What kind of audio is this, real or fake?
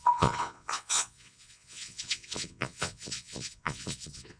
fake